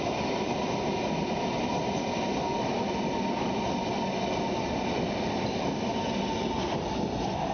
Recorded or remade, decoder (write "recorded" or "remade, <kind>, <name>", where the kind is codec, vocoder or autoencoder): recorded